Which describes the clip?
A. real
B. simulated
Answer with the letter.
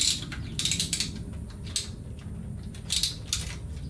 A